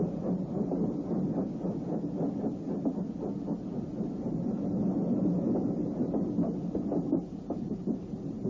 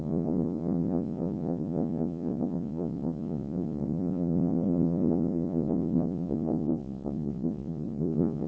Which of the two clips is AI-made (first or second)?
second